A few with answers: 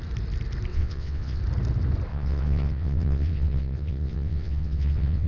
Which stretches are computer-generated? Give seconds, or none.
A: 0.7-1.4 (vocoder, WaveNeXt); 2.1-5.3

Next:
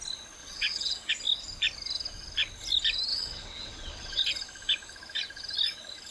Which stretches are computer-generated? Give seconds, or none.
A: 0.4-1.1 (vocoder, WaveNeXt); 3.1-4.2